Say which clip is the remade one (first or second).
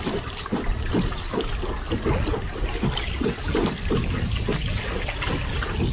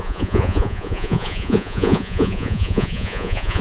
second